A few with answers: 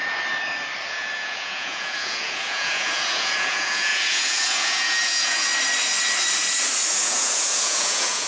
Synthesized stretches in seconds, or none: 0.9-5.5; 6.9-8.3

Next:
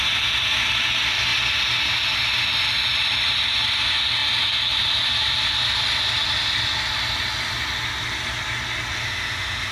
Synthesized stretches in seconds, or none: 9.0-9.7